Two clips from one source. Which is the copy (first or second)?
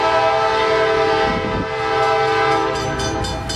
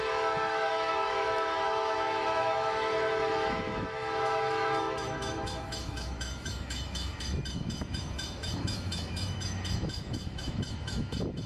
second